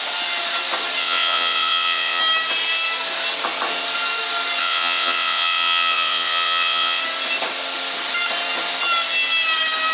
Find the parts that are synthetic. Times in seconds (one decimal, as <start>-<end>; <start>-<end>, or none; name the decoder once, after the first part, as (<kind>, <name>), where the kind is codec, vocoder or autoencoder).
1.0-2.2 (vocoder, WaveNeXt); 4.6-7.0